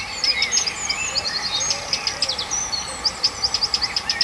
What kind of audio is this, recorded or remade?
recorded